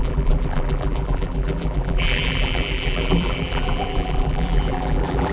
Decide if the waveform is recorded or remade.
remade